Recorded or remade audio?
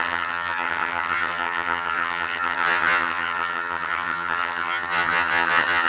remade